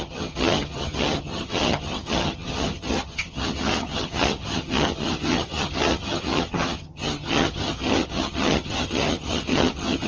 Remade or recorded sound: remade